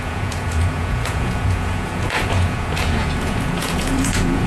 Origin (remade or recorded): remade